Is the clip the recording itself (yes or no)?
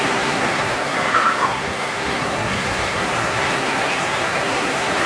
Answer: no